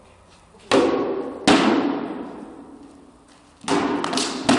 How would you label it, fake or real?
real